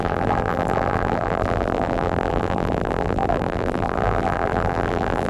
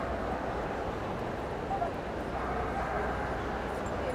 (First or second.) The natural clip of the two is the second